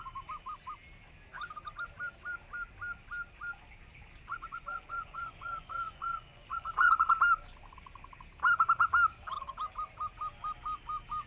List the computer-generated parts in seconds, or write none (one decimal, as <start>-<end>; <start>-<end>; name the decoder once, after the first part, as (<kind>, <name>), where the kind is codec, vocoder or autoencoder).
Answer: 4.3-7.1 (vocoder, Vocos)